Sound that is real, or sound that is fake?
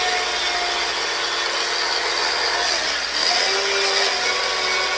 real